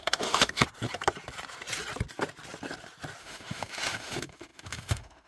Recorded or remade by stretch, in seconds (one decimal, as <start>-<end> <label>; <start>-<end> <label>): 0.0-0.6 remade; 0.6-3.2 recorded; 3.2-5.3 remade